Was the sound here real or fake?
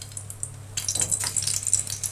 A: real